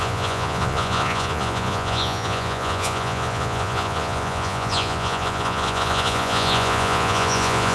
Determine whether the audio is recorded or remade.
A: remade